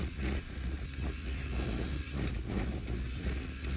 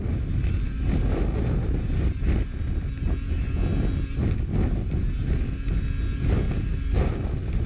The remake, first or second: first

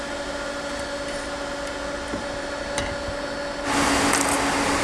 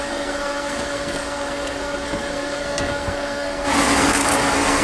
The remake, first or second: second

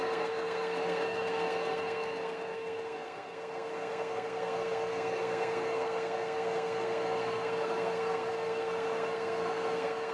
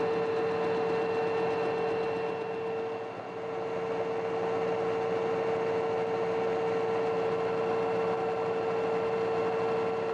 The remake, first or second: first